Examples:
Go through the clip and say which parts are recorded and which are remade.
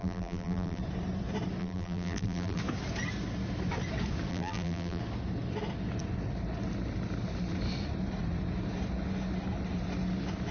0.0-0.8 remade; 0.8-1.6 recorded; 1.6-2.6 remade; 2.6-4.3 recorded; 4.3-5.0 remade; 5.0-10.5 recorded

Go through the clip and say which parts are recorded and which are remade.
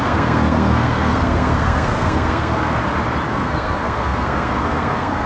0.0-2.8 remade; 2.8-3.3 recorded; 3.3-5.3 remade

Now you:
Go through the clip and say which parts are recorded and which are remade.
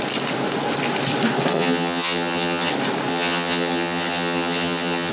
0.0-1.5 recorded; 1.5-2.7 remade; 2.7-3.1 recorded; 3.1-5.1 remade